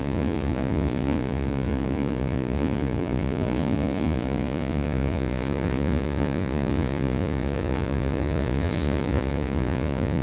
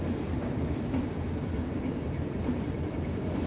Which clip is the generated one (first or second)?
first